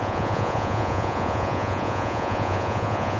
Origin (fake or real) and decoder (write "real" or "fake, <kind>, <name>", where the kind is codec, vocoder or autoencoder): fake, vocoder, Vocos